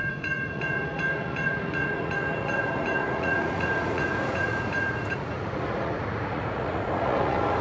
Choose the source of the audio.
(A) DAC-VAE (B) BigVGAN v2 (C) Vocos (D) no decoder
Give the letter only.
C